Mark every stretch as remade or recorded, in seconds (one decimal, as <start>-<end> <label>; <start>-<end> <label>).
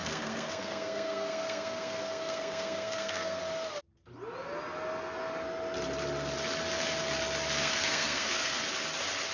0.0-3.4 remade; 3.4-7.6 recorded; 7.6-8.6 remade; 8.6-9.3 recorded